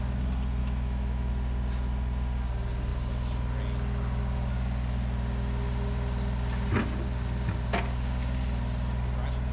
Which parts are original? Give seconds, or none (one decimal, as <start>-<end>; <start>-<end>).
0.0-0.6; 1.3-9.5